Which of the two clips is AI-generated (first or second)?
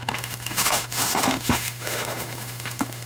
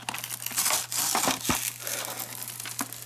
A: first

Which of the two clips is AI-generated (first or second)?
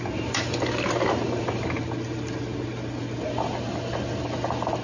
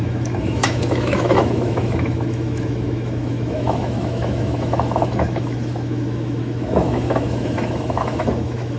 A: second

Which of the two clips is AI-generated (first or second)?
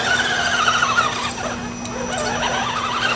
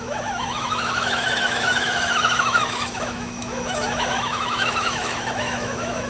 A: second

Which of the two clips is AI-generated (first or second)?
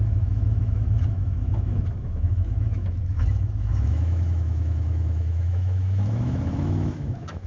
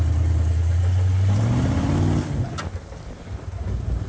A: first